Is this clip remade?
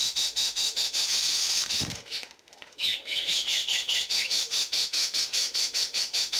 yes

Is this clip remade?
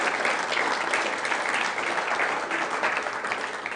no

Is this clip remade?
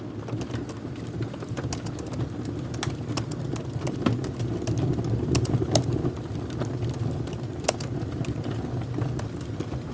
no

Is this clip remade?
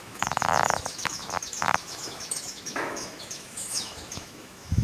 yes